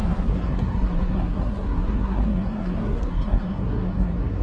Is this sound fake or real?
fake